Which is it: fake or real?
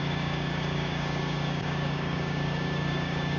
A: fake